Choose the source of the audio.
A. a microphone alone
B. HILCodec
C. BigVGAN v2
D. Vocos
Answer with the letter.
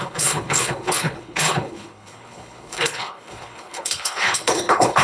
B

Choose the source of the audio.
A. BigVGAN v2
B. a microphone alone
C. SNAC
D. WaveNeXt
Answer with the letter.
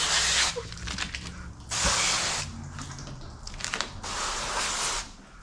B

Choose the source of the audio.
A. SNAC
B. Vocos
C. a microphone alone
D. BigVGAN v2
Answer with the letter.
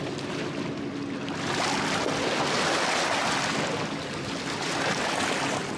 C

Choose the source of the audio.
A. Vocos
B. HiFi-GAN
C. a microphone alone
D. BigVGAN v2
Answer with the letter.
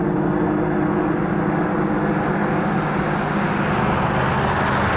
C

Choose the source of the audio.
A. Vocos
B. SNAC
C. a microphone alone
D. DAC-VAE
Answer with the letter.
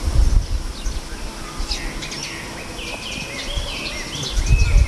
C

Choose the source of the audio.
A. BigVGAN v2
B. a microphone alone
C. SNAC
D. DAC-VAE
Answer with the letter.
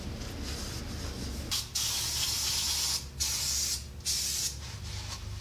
B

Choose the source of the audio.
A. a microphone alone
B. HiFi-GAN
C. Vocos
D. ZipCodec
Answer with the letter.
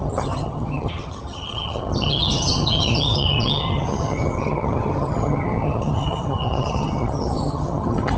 B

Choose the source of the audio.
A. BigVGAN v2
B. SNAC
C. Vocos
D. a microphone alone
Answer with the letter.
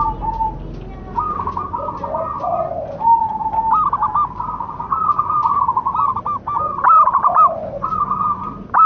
D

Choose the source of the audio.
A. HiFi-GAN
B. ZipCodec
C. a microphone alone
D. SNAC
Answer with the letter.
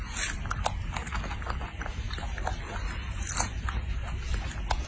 C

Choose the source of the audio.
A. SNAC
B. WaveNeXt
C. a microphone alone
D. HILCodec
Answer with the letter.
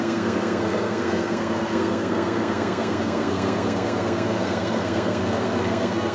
A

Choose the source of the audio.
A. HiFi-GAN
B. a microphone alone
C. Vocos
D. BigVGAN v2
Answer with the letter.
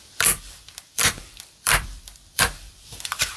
D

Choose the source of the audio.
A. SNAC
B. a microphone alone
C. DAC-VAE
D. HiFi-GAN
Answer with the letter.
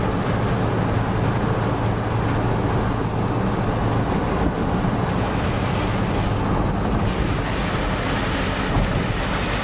B